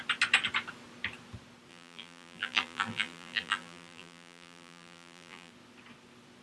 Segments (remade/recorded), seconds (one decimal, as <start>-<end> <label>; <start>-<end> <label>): 0.0-1.7 recorded; 1.7-5.5 remade; 5.5-6.4 recorded